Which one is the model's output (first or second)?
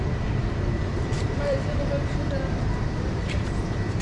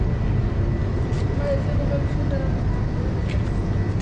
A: first